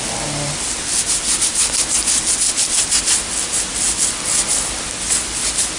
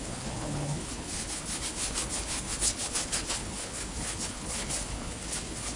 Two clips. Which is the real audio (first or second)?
first